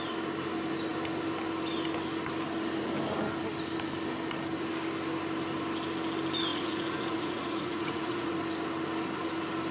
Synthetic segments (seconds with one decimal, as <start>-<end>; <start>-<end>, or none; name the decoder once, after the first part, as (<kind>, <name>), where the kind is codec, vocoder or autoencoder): 6.5-8.3 (vocoder, Vocos)